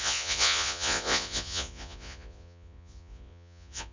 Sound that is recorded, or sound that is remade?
remade